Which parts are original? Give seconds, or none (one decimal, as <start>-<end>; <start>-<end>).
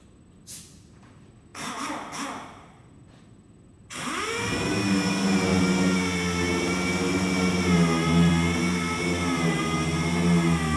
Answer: 0.0-10.8